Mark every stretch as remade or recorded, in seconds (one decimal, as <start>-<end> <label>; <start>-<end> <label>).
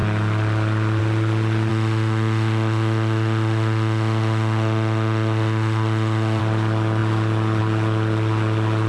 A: 0.0-1.7 recorded; 1.7-6.4 remade; 6.4-8.9 recorded